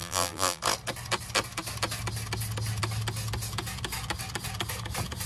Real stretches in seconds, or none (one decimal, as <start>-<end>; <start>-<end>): 0.6-5.3